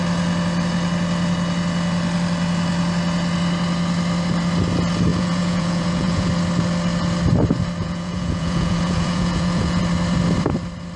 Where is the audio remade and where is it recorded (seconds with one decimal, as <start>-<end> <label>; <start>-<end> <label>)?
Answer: 0.0-5.1 recorded; 5.1-6.3 remade; 6.3-7.8 recorded; 7.8-9.8 remade; 9.8-11.0 recorded